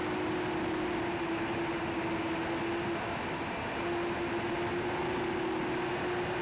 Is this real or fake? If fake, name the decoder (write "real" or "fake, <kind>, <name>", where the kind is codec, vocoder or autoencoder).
real